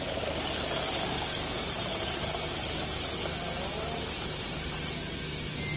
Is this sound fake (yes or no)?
no